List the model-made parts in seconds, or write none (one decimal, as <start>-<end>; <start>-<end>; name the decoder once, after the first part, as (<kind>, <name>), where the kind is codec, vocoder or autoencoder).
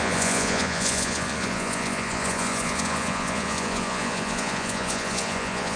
0.0-5.8 (vocoder, Vocos)